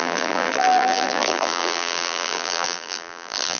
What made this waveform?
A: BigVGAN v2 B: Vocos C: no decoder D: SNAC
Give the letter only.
A